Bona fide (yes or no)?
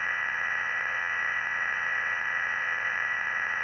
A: no